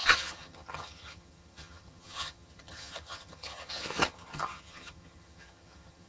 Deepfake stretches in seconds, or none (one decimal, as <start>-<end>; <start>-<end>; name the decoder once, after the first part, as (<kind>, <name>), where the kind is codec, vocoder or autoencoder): 0.0-6.1 (vocoder, HiFi-GAN)